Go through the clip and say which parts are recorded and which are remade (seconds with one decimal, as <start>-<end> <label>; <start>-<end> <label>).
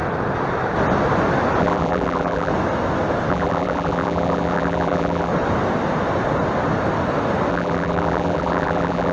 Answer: 0.0-1.6 recorded; 1.6-2.5 remade; 2.5-3.3 recorded; 3.3-5.3 remade; 5.3-7.5 recorded; 7.5-9.1 remade